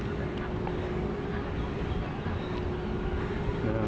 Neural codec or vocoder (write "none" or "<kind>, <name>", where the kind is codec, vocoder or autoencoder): none